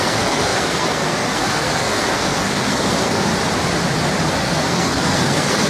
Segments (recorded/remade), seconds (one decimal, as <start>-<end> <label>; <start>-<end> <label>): 0.0-3.3 remade; 3.3-4.3 recorded; 4.3-5.7 remade